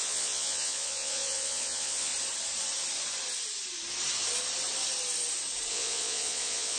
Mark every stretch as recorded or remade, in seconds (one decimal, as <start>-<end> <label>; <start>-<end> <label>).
0.0-2.1 remade; 2.1-5.7 recorded; 5.7-6.8 remade